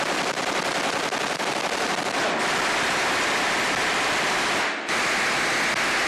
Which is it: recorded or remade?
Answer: recorded